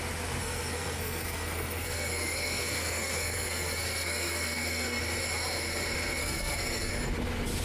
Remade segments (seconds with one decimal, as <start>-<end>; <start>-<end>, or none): 0.4-5.0; 6.2-6.9